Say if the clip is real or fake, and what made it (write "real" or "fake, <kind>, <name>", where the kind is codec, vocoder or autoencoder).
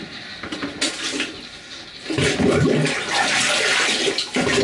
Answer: real